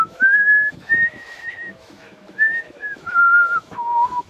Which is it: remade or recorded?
remade